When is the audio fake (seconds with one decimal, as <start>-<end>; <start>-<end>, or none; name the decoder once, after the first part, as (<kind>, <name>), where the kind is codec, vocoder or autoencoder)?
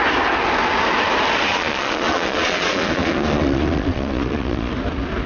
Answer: 1.5-4.7 (vocoder, Vocos)